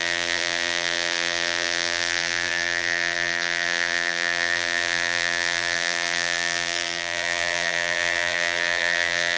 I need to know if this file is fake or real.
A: fake